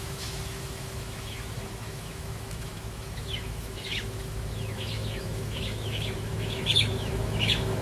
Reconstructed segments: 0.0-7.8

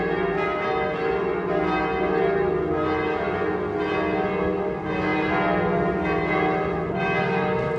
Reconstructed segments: none

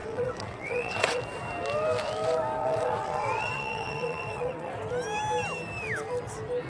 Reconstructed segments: 0.0-1.2; 2.6-4.7

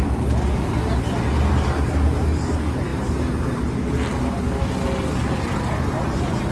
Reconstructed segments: none

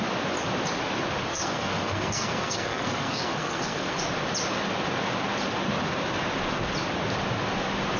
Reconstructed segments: 1.3-4.0

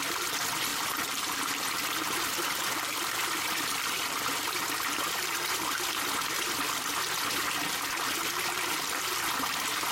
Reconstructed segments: 0.7-4.7